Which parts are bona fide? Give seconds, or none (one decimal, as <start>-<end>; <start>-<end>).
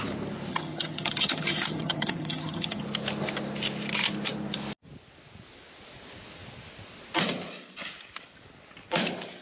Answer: 0.0-0.5; 2.8-9.4